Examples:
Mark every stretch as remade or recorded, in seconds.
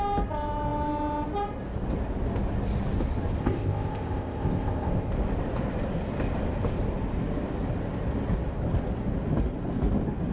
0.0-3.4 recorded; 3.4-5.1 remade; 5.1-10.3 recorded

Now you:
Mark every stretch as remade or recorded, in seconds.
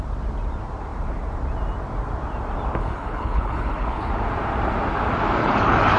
0.0-2.8 recorded; 2.8-4.1 remade; 4.1-5.4 recorded; 5.4-6.0 remade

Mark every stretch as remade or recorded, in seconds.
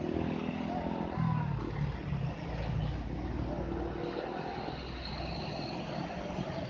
0.0-6.7 recorded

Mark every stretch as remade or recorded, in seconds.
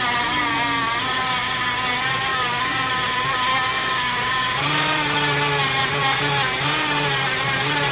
0.0-2.3 recorded; 2.3-2.9 remade; 2.9-3.5 recorded; 3.5-4.3 remade; 4.3-7.9 recorded